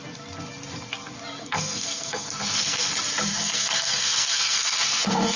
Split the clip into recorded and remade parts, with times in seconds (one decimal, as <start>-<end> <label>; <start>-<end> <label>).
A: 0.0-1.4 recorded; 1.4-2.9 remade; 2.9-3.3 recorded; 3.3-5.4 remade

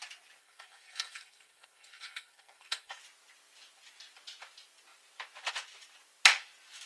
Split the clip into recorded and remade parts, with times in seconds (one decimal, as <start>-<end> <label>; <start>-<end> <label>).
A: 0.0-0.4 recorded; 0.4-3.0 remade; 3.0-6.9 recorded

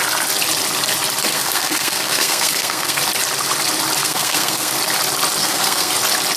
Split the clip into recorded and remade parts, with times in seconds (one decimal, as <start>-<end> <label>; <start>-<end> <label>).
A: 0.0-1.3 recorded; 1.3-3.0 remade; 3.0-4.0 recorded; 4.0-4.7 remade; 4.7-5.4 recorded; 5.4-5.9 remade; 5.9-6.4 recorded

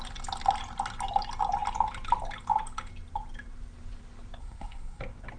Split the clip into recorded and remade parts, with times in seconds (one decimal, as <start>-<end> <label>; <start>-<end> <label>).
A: 0.0-4.4 recorded; 4.4-5.0 remade; 5.0-5.4 recorded